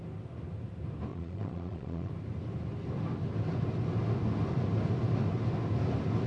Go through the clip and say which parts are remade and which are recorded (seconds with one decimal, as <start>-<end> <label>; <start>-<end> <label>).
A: 0.0-1.1 recorded; 1.1-2.1 remade; 2.1-6.3 recorded